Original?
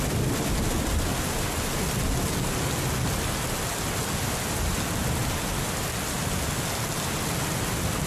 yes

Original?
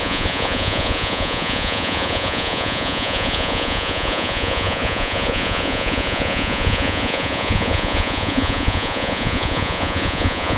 no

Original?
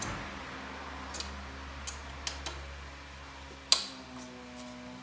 yes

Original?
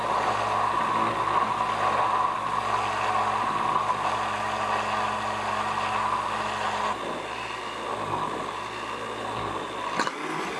yes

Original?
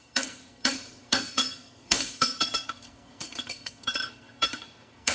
no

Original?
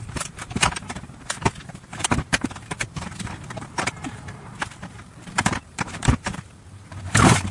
no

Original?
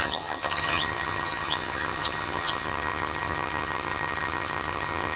no